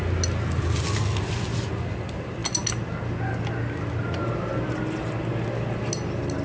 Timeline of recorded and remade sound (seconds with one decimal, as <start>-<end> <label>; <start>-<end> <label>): 0.0-6.4 recorded